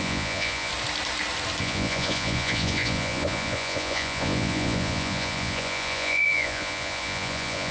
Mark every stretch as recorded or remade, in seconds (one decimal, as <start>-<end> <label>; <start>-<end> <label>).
0.0-0.7 remade; 0.7-1.6 recorded; 1.6-7.7 remade